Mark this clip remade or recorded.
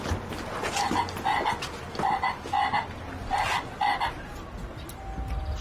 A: recorded